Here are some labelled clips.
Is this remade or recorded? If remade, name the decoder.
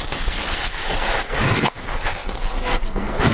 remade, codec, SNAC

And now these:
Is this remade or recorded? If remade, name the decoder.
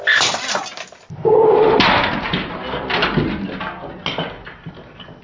recorded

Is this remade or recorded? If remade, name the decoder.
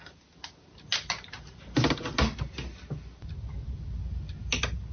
recorded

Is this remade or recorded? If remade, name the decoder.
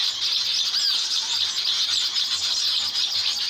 recorded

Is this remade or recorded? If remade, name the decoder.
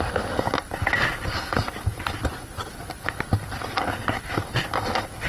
recorded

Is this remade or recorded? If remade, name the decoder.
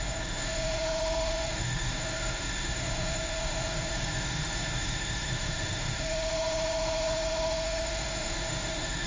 remade, autoencoder, DAC-VAE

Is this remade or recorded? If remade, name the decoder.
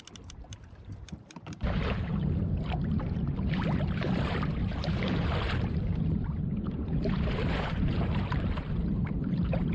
remade, vocoder, BigVGAN v2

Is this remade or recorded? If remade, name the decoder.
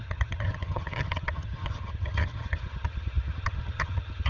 remade, vocoder, HiFi-GAN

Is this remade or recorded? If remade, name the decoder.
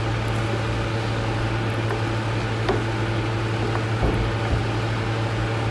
recorded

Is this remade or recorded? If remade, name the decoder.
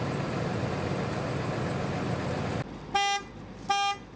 recorded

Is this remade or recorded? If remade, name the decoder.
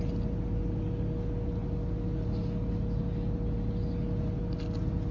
recorded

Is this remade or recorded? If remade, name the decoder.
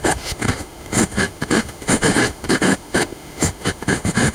remade, autoencoder, DAC-VAE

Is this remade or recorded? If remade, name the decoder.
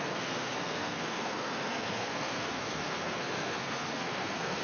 remade, codec, SNAC